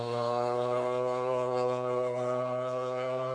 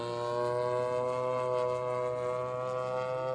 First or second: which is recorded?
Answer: second